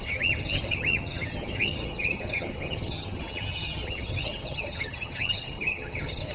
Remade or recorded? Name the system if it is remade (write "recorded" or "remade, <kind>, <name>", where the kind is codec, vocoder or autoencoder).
remade, vocoder, HiFi-GAN